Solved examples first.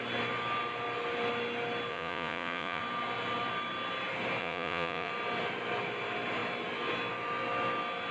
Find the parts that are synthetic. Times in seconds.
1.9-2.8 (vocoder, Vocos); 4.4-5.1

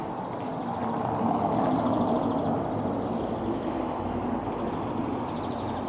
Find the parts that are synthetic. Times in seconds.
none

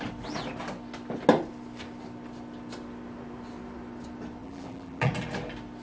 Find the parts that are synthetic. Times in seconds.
4.4-5.1 (vocoder, BigVGAN v2)

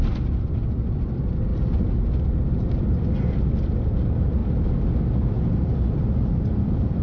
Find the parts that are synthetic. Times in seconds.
0.0-1.5 (vocoder, BigVGAN v2); 3.3-4.4; 5.2-7.0

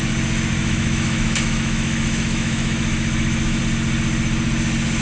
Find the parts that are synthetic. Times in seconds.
0.6-3.6 (autoencoder, DAC-VAE)